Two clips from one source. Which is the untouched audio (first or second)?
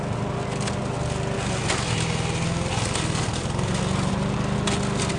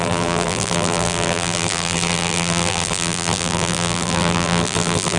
first